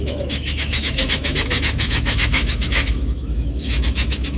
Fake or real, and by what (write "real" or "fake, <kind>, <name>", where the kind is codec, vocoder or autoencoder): fake, autoencoder, DAC-VAE